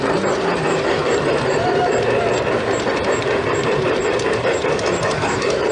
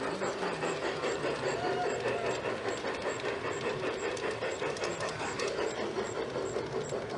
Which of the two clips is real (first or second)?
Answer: second